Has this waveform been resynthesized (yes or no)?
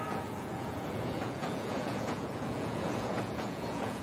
yes